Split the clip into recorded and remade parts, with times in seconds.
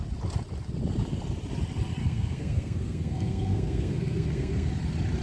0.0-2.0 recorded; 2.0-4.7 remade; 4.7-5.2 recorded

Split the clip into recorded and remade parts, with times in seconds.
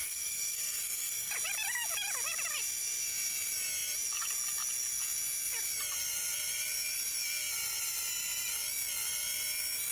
0.0-1.3 remade; 1.3-9.9 recorded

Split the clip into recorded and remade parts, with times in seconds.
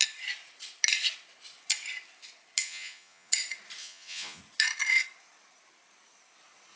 0.0-2.6 recorded; 2.6-3.3 remade; 3.3-3.8 recorded; 3.8-4.4 remade; 4.4-6.8 recorded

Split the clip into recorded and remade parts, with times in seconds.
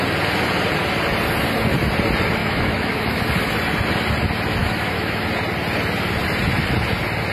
0.0-2.4 recorded; 2.4-3.2 remade; 3.2-4.6 recorded; 4.6-5.2 remade; 5.2-7.3 recorded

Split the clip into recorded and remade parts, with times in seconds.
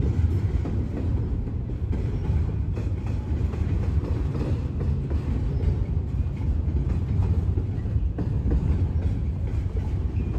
0.0-1.1 recorded; 1.1-4.8 remade; 4.8-7.2 recorded; 7.2-8.0 remade; 8.0-9.5 recorded; 9.5-10.4 remade